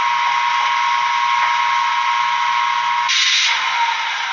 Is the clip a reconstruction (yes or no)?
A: no